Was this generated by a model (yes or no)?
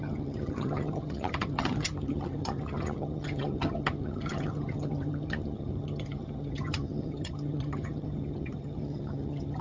yes